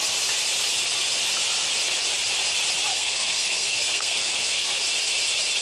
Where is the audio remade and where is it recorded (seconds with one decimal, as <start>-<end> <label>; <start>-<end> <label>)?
0.0-2.9 recorded; 2.9-4.8 remade; 4.8-5.6 recorded